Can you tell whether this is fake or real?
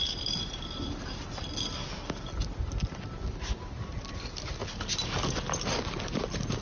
real